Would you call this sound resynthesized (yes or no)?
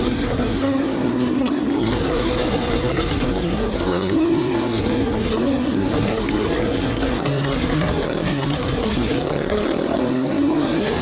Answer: yes